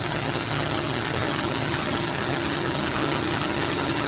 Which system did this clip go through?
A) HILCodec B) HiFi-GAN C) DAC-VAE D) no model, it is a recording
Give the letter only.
B